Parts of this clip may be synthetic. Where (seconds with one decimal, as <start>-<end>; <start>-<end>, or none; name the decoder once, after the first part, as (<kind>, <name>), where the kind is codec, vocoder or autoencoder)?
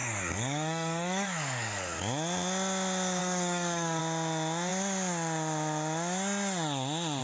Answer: 0.0-2.0 (codec, DAC); 3.2-4.0